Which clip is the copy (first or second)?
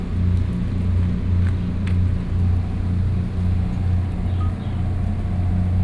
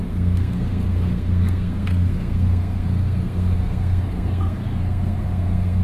second